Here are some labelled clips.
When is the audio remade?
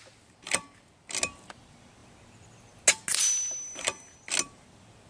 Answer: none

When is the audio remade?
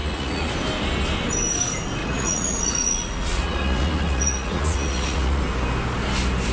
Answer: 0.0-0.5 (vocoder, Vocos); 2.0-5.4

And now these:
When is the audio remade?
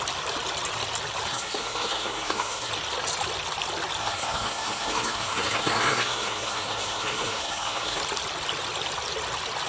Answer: 1.3-2.7 (codec, SNAC); 4.0-8.0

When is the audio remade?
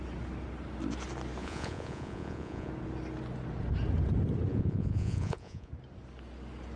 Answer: 1.4-2.7 (vocoder, Vocos); 4.5-5.7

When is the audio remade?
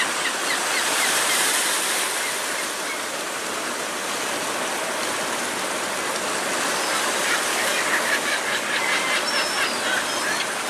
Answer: 7.5-8.8 (codec, DAC)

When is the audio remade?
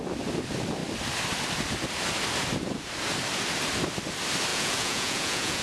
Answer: 4.5-5.6 (vocoder, Vocos)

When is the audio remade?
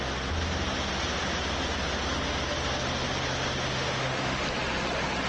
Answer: 3.7-4.4 (autoencoder, DAC-VAE)